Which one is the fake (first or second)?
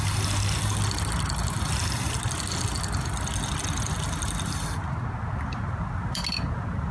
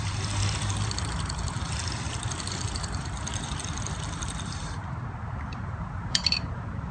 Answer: second